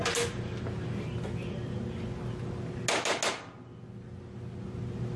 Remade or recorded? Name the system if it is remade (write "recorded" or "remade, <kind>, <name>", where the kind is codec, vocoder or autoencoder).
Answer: recorded